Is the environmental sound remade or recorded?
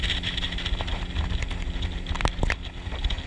recorded